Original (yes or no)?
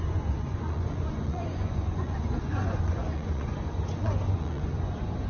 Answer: no